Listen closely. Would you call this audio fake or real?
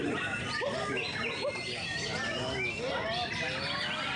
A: real